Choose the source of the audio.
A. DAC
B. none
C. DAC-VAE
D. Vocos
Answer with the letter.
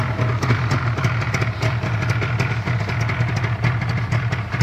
B